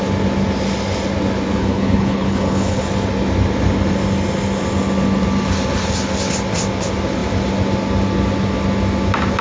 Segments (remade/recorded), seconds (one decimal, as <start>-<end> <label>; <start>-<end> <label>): 0.0-1.6 recorded; 1.6-2.8 remade; 2.8-9.4 recorded